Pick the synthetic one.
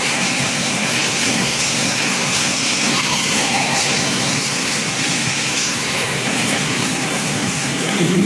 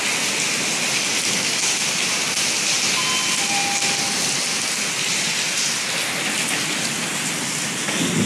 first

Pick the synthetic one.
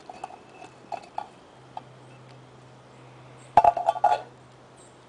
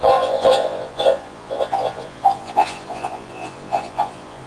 second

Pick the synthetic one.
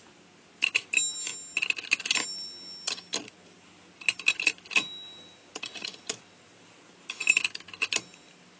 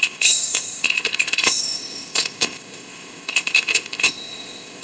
second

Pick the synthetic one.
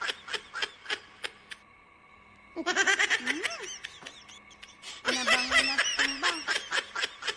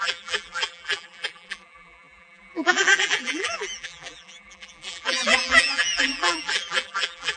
second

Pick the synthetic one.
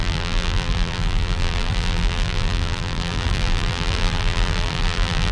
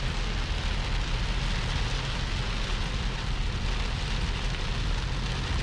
first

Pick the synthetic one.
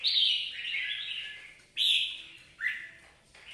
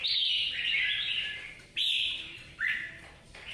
second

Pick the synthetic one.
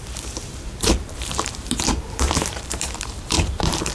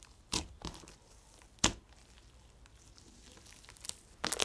first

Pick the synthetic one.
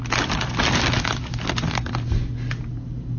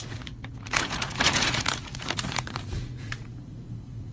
second